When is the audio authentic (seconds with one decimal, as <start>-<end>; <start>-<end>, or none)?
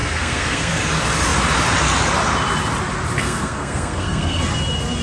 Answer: 0.8-3.2; 4.4-5.0